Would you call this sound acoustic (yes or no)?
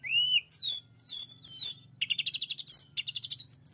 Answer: yes